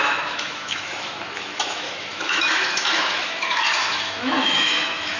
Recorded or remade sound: remade